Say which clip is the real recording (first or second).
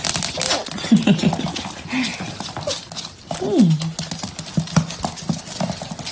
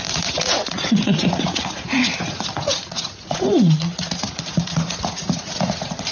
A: first